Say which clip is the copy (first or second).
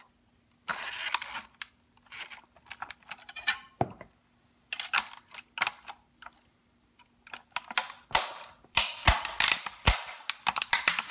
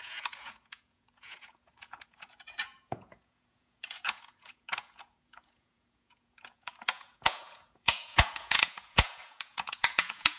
second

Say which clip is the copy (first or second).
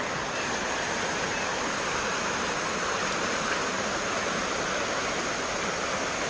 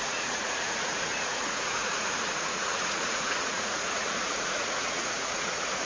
second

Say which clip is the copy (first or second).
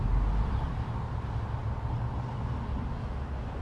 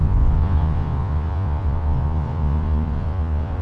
second